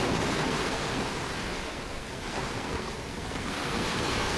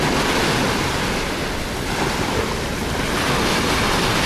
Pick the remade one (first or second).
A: first